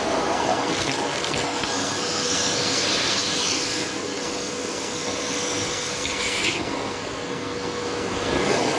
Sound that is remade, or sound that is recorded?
remade